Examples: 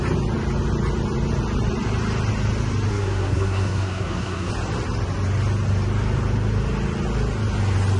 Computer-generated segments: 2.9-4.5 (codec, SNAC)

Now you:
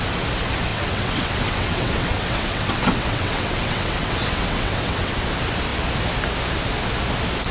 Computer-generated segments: 0.7-5.2 (vocoder, WaveNeXt)

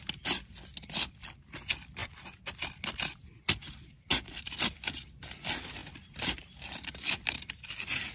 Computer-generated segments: none